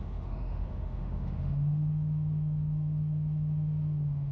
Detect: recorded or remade remade